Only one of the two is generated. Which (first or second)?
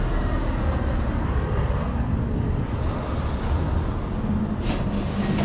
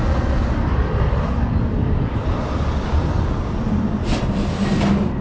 second